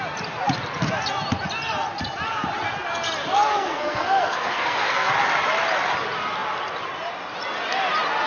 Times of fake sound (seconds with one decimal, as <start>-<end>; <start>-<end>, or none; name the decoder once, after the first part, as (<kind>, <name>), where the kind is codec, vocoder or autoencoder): 3.3-5.1 (codec, SNAC)